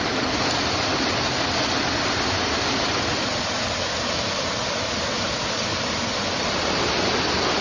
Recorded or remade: recorded